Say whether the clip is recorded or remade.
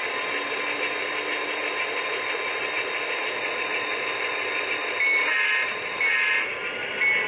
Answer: recorded